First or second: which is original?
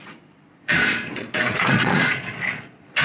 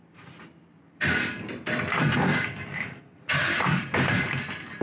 second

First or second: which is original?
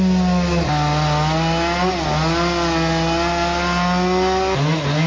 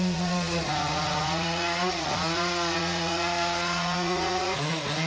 first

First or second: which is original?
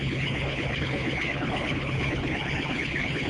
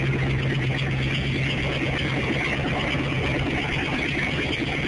second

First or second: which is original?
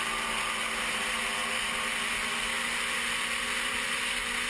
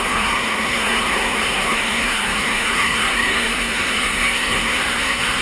first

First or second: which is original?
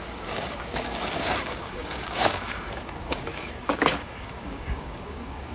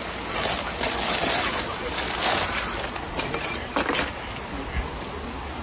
second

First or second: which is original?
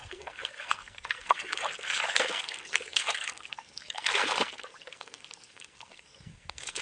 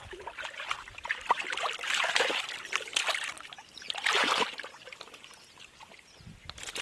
second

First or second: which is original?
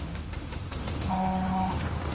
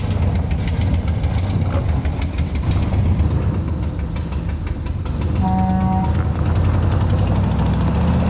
second